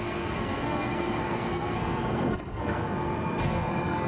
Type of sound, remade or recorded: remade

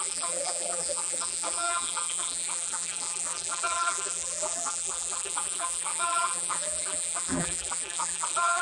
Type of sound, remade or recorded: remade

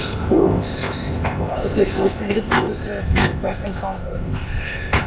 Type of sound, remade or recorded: remade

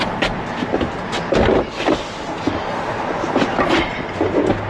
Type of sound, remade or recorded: recorded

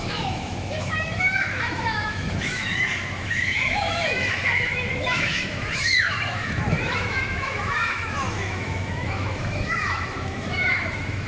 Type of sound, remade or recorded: remade